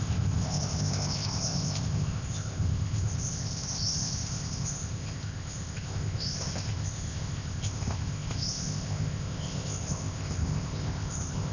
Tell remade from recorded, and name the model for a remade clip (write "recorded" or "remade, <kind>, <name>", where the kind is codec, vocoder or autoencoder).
remade, codec, ZipCodec